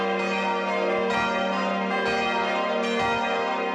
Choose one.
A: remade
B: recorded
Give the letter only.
B